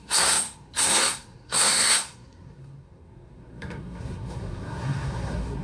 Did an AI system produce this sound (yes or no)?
yes